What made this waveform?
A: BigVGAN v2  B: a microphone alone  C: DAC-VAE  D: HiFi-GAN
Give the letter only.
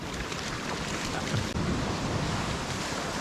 A